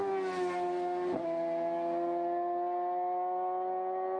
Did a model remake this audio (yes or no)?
no